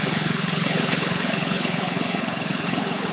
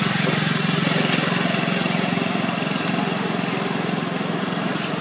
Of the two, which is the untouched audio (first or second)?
second